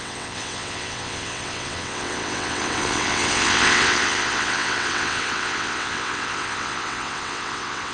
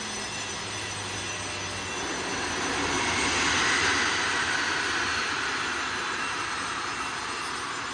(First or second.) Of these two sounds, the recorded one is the second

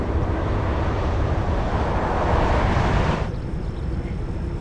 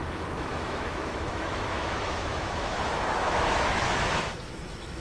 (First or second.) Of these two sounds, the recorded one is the first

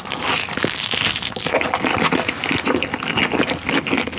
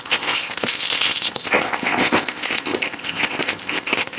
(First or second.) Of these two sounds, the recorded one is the first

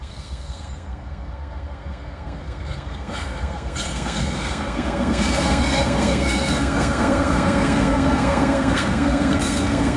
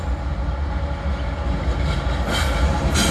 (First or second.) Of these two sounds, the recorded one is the second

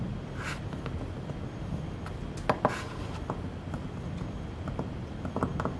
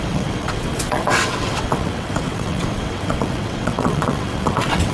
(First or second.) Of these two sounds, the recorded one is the first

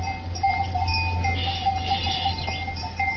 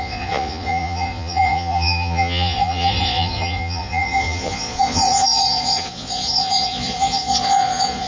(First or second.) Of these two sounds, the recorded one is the first